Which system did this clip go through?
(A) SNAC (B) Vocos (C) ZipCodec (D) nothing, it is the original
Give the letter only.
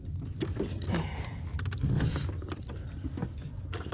D